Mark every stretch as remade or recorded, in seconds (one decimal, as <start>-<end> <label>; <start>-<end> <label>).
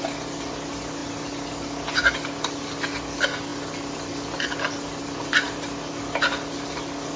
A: 0.0-7.2 recorded